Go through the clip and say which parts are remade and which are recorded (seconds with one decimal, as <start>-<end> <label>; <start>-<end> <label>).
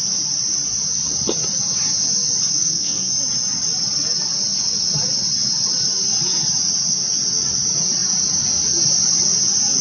0.0-2.6 recorded; 2.6-3.1 remade; 3.1-9.8 recorded